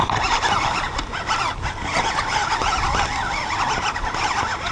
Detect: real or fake real